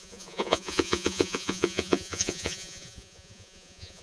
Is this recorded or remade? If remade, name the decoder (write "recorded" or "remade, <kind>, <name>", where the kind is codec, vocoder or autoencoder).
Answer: remade, vocoder, Vocos